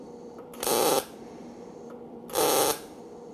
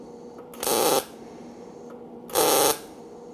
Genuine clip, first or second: second